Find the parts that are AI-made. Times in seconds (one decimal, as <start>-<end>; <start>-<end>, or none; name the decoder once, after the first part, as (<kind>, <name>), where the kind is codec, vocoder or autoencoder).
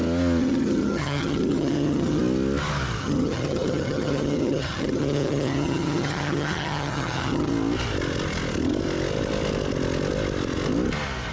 0.4-2.2 (vocoder, HiFi-GAN); 3.0-7.5